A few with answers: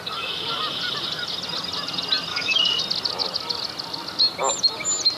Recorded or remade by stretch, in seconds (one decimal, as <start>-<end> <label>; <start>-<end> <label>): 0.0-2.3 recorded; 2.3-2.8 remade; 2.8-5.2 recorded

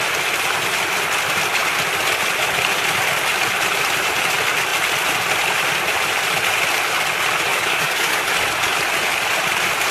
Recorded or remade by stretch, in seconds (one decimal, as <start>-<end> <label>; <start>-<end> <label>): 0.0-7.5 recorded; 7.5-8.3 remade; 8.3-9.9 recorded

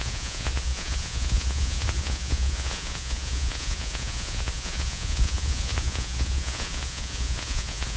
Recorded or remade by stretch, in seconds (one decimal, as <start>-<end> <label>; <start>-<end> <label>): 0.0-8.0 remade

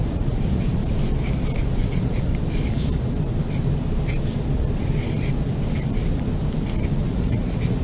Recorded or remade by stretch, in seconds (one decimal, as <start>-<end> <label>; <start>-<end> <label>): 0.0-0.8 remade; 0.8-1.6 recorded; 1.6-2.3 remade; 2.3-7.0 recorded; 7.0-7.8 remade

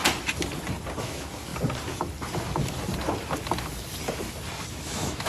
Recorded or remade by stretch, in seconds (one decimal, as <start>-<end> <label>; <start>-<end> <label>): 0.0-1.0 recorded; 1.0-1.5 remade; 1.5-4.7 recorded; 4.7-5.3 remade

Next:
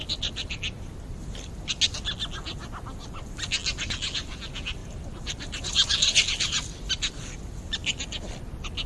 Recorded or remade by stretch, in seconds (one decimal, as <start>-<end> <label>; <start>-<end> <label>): 0.0-1.6 remade; 1.6-4.8 recorded; 4.8-7.1 remade; 7.1-8.9 recorded

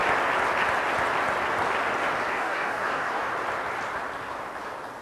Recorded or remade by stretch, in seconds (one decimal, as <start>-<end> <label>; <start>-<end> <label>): 0.0-2.3 recorded; 2.3-3.3 remade; 3.3-5.0 recorded